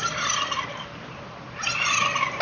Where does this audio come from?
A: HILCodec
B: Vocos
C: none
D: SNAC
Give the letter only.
C